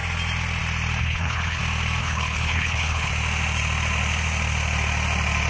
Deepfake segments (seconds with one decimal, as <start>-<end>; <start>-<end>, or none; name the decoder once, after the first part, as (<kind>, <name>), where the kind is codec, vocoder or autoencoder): 1.0-1.6 (codec, HILCodec); 2.0-3.1